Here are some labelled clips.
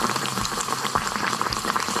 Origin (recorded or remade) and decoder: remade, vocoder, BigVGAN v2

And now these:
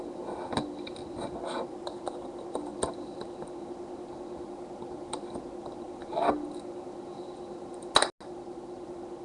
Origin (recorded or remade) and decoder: recorded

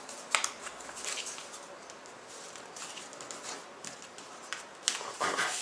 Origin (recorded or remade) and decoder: recorded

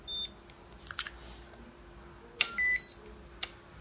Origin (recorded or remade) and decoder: recorded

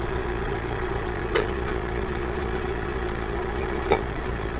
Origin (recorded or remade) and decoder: remade, vocoder, Vocos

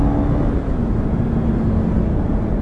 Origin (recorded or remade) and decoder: recorded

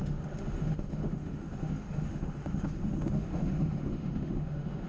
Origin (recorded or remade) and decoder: remade, autoencoder, DAC-VAE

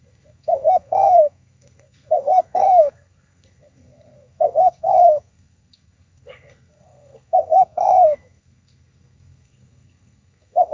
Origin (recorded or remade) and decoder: remade, codec, SNAC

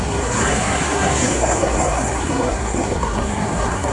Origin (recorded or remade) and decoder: remade, codec, SNAC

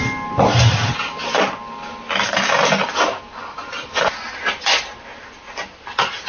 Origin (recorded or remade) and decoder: recorded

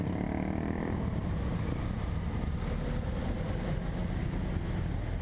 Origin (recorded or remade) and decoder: recorded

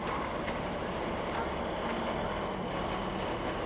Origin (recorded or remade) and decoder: recorded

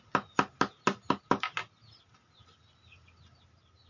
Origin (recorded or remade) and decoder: recorded